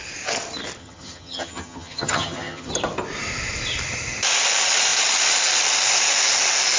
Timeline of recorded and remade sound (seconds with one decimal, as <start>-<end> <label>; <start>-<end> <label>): 0.0-0.8 recorded; 0.8-2.7 remade; 2.7-6.8 recorded